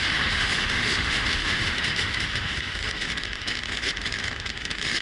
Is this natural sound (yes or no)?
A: no